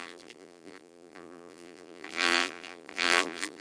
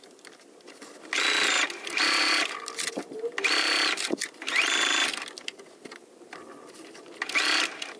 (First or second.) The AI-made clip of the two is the first